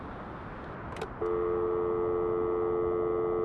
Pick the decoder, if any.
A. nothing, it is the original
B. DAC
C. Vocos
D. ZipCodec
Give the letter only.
A